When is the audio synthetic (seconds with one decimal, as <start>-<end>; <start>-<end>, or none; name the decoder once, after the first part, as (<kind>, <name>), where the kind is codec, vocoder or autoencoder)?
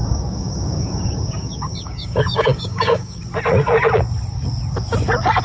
0.0-3.2 (codec, DAC)